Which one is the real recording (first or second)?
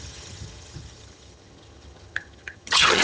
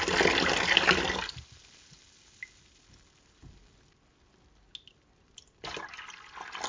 second